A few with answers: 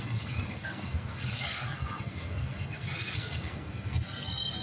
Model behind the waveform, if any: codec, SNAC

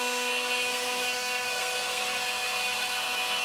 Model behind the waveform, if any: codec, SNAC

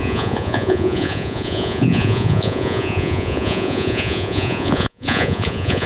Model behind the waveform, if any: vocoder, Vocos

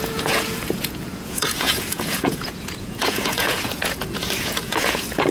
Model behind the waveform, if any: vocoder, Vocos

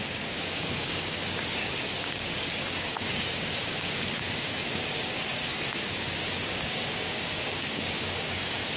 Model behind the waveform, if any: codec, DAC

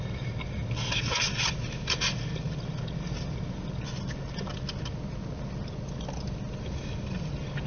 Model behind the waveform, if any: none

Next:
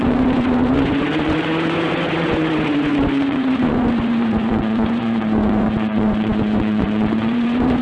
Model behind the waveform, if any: vocoder, Vocos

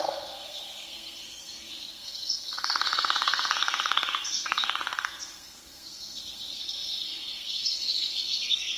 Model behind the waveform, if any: codec, SNAC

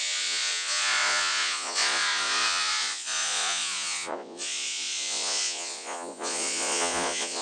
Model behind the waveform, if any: vocoder, Vocos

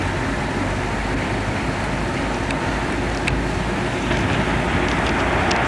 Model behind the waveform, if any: none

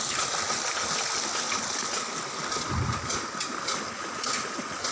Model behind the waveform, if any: none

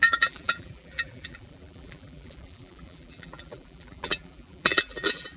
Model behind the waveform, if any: vocoder, BigVGAN v2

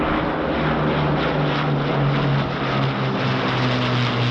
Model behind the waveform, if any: none